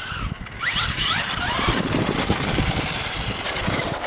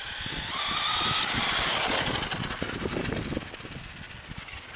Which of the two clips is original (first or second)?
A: second